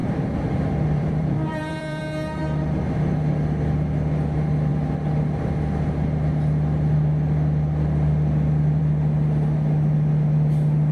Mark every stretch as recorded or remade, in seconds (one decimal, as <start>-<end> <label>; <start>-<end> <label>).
0.0-2.0 remade; 2.0-10.9 recorded